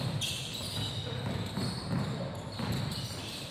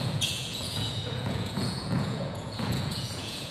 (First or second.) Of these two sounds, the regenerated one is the second